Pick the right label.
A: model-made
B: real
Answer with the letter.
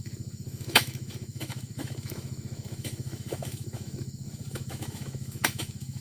A